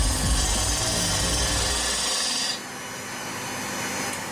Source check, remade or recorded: recorded